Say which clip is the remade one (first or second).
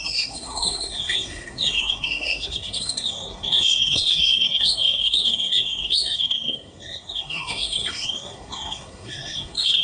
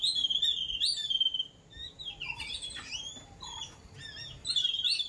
first